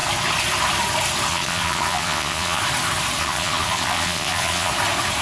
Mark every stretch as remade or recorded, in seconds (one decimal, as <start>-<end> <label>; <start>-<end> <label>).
0.0-1.3 recorded; 1.3-2.6 remade; 2.6-3.2 recorded; 3.2-4.7 remade; 4.7-5.2 recorded